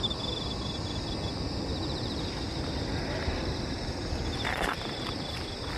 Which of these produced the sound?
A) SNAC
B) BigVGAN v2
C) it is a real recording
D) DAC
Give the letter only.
C